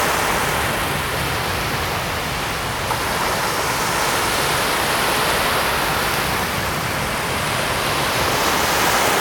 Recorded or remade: recorded